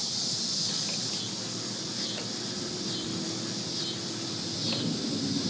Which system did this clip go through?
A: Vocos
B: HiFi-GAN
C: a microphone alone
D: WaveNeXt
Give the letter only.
C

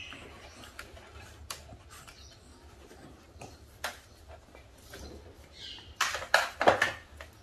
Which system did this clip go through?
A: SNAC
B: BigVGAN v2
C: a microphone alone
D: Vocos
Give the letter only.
C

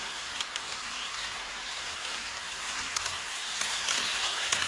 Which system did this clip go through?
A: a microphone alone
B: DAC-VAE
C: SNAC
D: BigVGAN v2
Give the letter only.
C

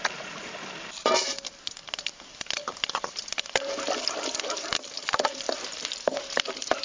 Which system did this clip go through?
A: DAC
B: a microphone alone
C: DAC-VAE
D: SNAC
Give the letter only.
B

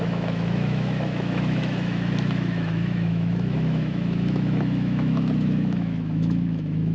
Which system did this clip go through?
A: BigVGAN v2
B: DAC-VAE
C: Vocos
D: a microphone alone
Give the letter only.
B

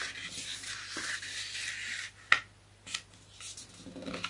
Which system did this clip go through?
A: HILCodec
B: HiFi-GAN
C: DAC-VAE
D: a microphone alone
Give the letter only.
D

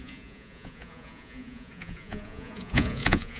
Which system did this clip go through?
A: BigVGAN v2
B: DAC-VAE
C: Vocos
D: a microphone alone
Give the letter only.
C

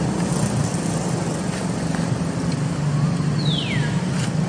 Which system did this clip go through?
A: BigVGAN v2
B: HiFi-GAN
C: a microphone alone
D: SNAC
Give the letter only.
C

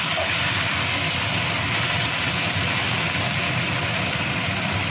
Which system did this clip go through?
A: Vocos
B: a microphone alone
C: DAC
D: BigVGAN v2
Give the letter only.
B